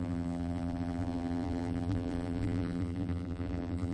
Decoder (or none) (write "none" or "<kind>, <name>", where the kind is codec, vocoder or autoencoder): vocoder, BigVGAN v2